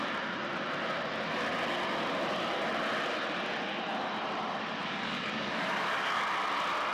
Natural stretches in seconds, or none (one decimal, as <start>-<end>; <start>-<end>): 0.0-4.8; 6.2-6.9